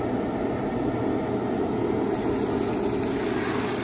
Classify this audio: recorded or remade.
recorded